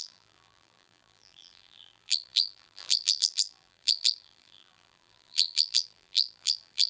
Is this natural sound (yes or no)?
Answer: no